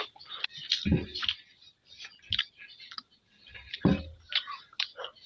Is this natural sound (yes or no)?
yes